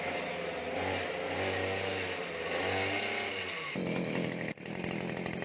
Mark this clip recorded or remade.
recorded